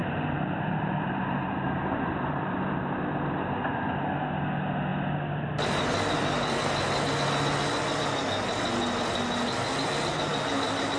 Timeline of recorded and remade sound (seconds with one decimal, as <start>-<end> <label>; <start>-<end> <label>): 0.0-2.8 remade; 2.8-11.0 recorded